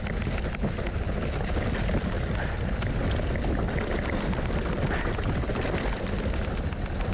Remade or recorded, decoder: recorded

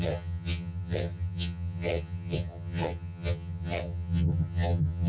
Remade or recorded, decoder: remade, vocoder, HiFi-GAN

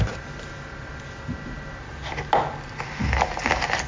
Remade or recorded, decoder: recorded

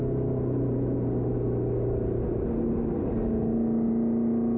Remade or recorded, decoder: recorded